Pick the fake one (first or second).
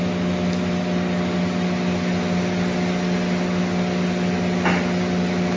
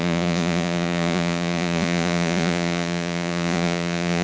second